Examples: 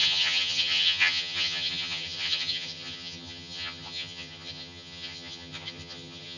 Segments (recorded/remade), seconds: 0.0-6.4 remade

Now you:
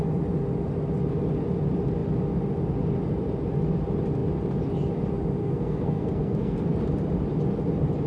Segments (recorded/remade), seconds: 0.0-5.4 recorded; 5.4-6.8 remade; 6.8-8.1 recorded

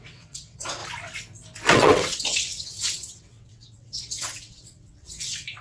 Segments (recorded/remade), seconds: 0.0-0.8 remade; 0.8-1.7 recorded; 1.7-5.6 remade

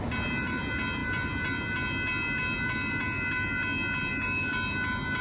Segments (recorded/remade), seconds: 0.0-5.2 recorded

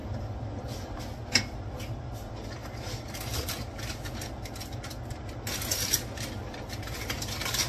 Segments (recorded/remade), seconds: 0.0-7.7 recorded

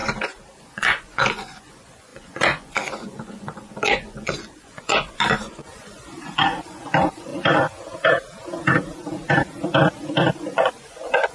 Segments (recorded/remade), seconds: 0.0-0.6 recorded; 0.6-7.3 remade; 7.3-10.3 recorded; 10.3-11.3 remade

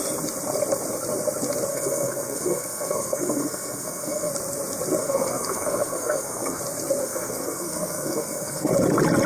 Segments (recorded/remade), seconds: 0.0-1.7 recorded; 1.7-4.3 remade; 4.3-5.0 recorded; 5.0-6.6 remade; 6.6-7.0 recorded; 7.0-8.7 remade; 8.7-9.3 recorded